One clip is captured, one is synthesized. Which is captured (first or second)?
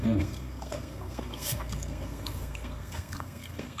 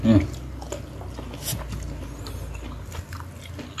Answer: second